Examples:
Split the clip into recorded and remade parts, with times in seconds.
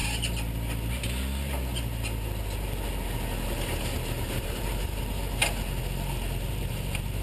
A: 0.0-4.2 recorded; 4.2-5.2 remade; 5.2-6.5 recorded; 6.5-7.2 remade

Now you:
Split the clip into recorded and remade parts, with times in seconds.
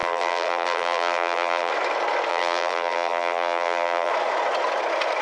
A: 0.0-1.7 remade; 1.7-2.3 recorded; 2.3-4.1 remade; 4.1-5.2 recorded